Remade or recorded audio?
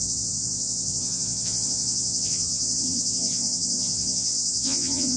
remade